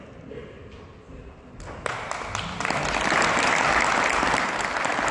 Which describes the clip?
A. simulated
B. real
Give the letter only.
B